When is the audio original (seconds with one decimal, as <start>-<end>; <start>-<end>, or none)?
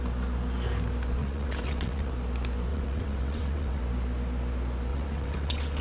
0.0-1.2; 2.1-2.7; 3.8-4.9